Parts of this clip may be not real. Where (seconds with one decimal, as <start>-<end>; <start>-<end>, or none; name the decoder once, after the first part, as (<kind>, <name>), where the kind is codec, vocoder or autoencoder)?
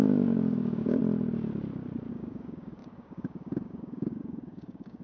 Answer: 0.0-1.0 (codec, DAC); 2.1-5.0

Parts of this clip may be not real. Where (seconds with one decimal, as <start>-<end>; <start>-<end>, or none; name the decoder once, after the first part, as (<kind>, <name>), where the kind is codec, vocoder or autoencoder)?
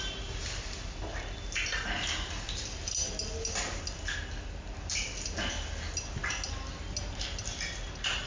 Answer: none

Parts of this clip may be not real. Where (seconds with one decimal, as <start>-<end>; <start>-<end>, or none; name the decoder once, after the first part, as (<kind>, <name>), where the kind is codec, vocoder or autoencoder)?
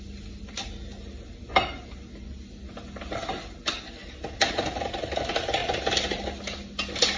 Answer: none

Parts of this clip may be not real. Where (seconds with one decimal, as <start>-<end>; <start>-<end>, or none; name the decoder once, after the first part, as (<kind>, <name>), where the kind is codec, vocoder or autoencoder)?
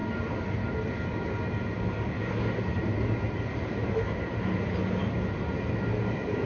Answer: none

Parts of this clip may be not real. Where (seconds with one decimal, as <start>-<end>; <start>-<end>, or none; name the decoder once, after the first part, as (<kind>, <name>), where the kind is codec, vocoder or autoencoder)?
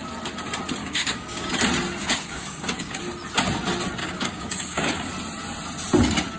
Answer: 0.8-1.5 (codec, DAC); 2.0-3.0; 4.0-5.1